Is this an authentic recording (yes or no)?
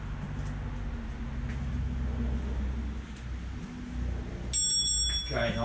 yes